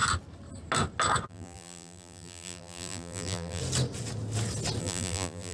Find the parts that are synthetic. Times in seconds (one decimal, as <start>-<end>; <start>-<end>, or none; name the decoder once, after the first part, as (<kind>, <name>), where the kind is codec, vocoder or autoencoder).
1.3-3.6 (vocoder, BigVGAN v2); 4.8-5.5